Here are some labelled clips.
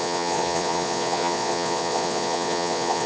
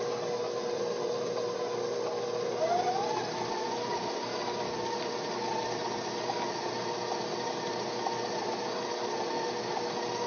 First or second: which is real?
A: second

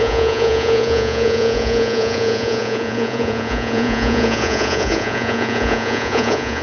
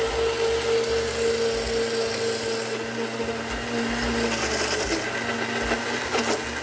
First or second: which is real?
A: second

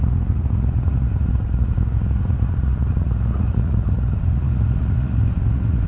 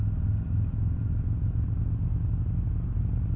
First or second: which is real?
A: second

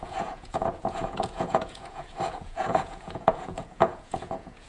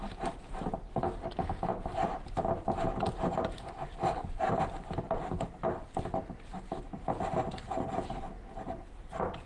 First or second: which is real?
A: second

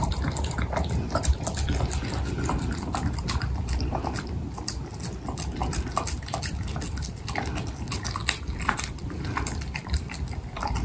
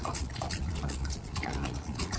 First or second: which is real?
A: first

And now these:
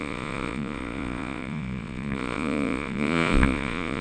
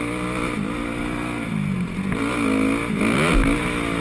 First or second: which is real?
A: second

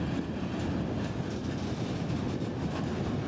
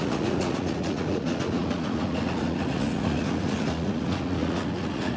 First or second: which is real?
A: first